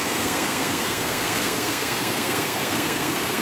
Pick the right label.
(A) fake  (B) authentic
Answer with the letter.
A